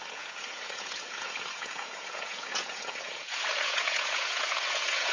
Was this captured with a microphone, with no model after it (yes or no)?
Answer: no